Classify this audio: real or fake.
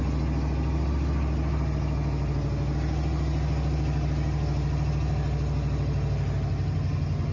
real